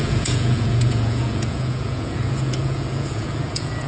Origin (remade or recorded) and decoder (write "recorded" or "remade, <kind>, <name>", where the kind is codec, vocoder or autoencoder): remade, vocoder, Vocos